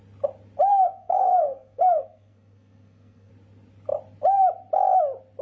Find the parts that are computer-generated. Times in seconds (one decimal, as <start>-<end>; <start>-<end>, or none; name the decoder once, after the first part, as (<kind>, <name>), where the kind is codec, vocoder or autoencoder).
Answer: 0.7-3.3 (codec, SNAC)